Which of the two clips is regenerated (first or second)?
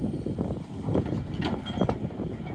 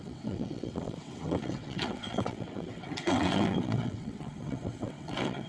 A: second